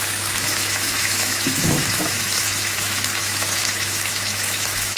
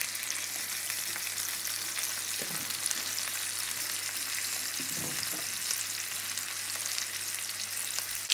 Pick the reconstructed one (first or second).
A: first